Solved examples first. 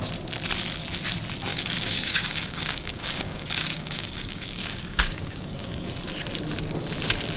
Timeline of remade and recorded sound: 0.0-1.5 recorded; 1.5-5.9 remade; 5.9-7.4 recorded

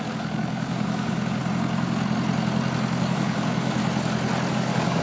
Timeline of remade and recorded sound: 0.0-1.4 remade; 1.4-3.0 recorded; 3.0-3.8 remade; 3.8-4.5 recorded; 4.5-5.0 remade

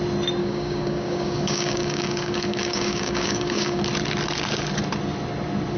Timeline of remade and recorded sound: 0.0-0.4 recorded; 0.4-3.8 remade; 3.8-5.8 recorded

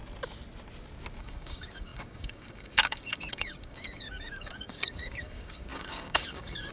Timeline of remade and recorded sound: 0.0-1.2 recorded; 1.2-6.7 remade

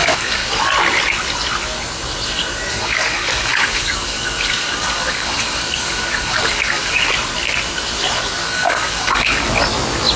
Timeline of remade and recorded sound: 0.0-0.6 remade; 0.6-2.7 recorded; 2.7-7.1 remade; 7.1-8.4 recorded; 8.4-9.5 remade; 9.5-10.2 recorded

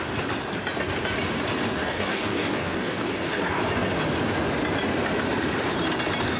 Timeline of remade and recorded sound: 0.0-1.8 recorded; 1.8-3.6 remade; 3.6-6.4 recorded